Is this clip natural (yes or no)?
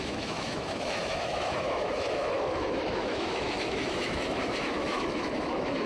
no